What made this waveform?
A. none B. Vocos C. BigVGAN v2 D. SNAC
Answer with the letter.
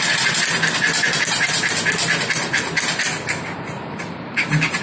A